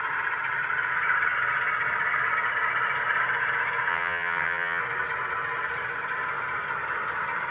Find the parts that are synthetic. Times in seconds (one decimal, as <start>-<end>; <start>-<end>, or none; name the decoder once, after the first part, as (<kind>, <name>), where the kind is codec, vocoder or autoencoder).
3.9-4.8 (vocoder, HiFi-GAN)